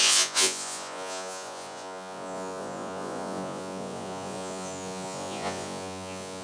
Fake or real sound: fake